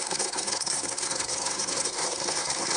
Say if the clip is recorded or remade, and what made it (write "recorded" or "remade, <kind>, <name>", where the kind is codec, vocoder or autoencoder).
remade, codec, SNAC